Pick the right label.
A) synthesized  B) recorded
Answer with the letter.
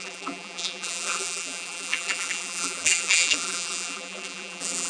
A